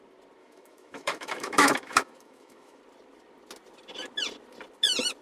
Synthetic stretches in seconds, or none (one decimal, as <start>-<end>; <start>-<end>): 0.4-2.8